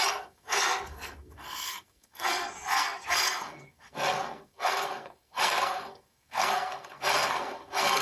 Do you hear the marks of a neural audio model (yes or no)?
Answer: yes